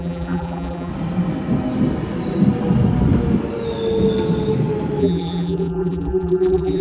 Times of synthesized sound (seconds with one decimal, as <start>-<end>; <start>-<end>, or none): 0.0-0.9; 5.0-6.8